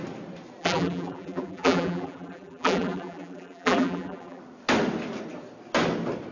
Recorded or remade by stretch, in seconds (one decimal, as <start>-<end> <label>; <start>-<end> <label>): 0.0-0.6 recorded; 0.6-4.4 remade; 4.4-6.3 recorded